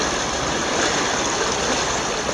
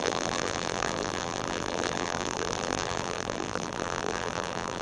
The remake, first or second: second